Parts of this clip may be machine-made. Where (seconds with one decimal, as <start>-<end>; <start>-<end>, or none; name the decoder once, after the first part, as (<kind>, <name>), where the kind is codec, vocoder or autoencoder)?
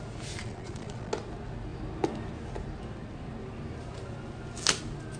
0.4-1.1 (vocoder, Vocos)